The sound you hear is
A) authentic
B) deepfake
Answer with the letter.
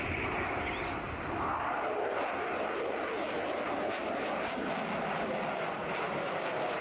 A